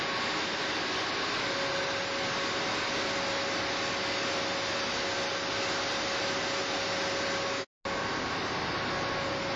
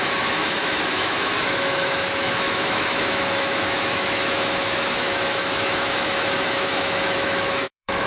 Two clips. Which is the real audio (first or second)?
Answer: first